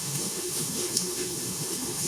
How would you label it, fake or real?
fake